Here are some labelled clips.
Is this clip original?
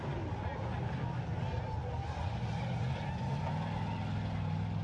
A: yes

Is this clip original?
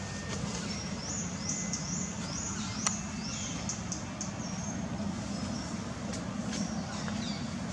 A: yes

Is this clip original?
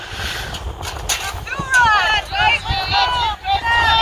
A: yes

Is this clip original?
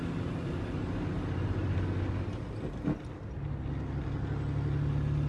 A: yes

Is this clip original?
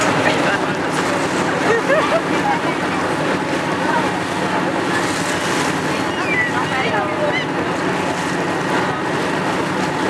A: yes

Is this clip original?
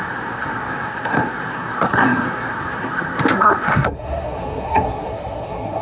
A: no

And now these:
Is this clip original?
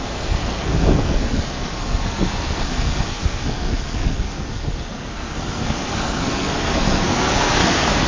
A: no